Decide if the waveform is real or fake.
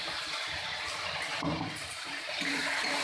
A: fake